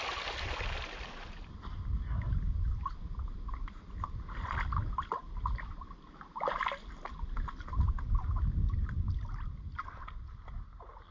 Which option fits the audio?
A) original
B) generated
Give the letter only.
A